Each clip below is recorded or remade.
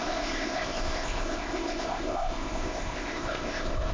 remade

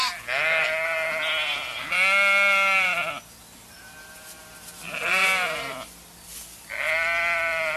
recorded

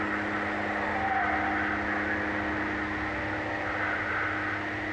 recorded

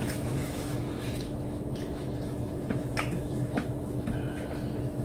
remade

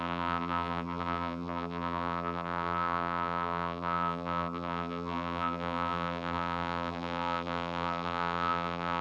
remade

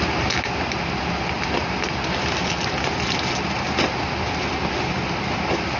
recorded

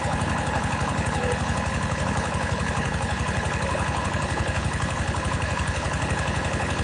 remade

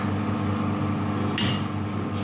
recorded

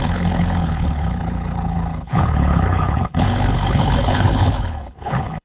remade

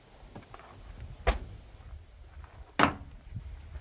recorded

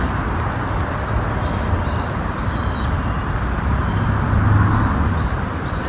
recorded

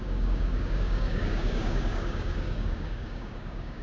remade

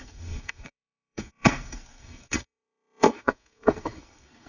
remade